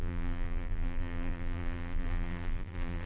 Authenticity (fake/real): fake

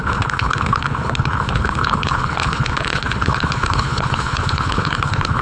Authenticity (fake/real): fake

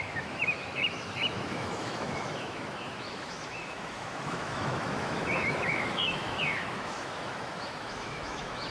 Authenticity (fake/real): fake